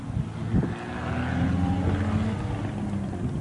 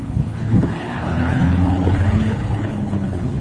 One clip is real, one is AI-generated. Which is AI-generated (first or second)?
second